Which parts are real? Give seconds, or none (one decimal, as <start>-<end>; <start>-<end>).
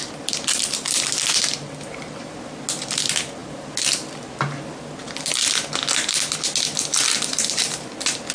0.0-8.3